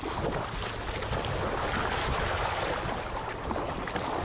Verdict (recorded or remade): recorded